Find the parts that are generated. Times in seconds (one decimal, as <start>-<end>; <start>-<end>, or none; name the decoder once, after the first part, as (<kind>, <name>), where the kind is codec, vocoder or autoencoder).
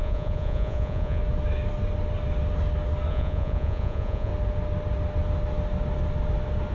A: 0.0-1.2 (vocoder, Vocos); 3.1-4.3